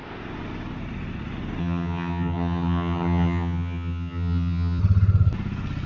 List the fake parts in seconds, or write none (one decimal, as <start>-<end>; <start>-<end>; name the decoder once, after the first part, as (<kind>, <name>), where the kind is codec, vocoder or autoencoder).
1.6-4.8 (vocoder, HiFi-GAN)